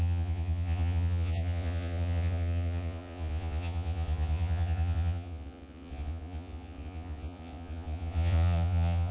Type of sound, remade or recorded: remade